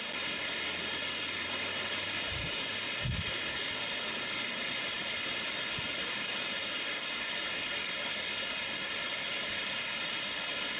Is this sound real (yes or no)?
yes